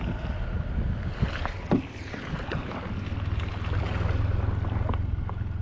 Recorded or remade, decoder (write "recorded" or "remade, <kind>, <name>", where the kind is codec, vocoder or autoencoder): recorded